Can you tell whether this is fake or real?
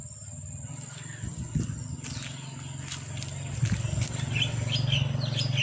real